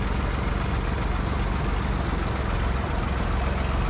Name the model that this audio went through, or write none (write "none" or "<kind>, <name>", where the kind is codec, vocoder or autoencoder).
none